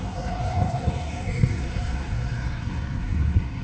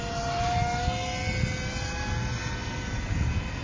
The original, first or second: second